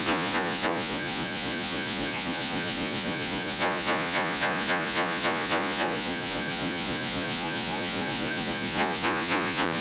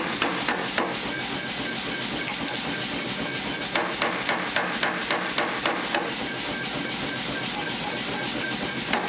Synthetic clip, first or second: first